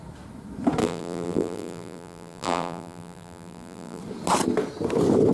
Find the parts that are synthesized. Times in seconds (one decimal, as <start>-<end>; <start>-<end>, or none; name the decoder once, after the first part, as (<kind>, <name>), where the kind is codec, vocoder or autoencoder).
0.8-4.0 (vocoder, BigVGAN v2)